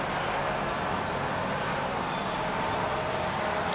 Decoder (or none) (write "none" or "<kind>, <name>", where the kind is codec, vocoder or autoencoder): none